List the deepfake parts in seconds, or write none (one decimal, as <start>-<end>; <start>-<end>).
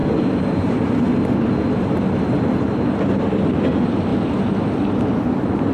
none